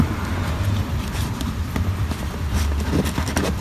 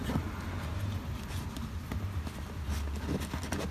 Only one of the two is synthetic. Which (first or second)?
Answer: first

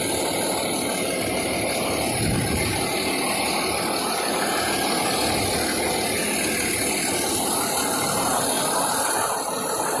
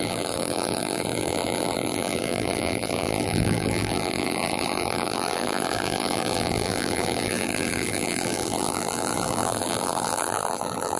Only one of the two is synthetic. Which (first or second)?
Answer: second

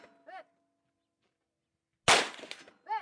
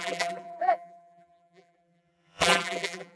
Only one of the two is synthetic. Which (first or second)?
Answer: second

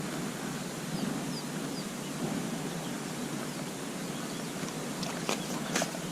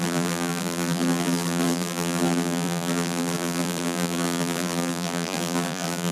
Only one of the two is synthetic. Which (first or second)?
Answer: second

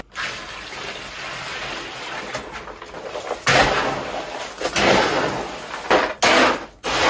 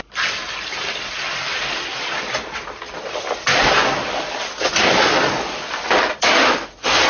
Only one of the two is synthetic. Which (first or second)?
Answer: second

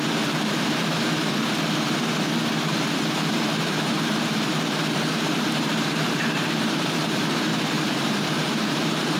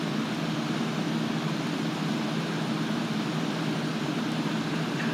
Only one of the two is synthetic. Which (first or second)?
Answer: first